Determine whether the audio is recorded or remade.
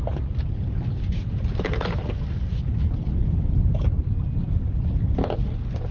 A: recorded